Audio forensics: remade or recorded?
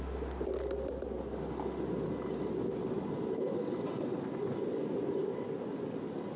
recorded